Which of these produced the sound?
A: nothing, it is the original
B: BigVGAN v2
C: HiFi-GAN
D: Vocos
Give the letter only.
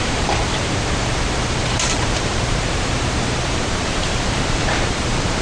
B